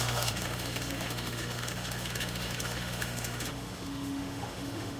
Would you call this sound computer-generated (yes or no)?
yes